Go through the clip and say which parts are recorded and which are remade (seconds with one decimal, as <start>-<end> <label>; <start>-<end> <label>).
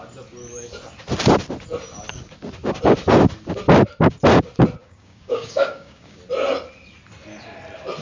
0.0-4.8 recorded; 4.8-6.2 remade; 6.2-8.0 recorded